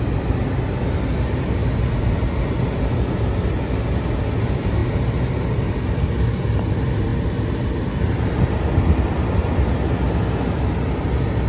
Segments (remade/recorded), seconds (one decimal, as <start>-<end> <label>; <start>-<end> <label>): 0.0-11.5 recorded